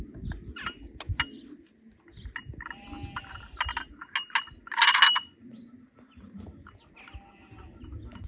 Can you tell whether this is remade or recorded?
recorded